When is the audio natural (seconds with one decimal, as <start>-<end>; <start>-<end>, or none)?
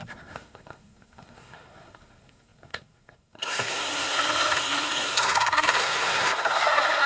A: none